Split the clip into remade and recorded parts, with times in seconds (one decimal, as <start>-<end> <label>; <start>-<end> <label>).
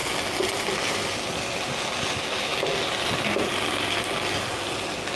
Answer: 0.0-5.2 recorded